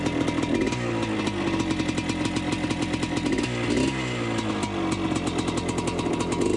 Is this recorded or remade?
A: recorded